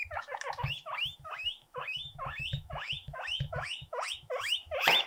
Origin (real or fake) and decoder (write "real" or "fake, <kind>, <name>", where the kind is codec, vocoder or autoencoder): fake, autoencoder, DAC-VAE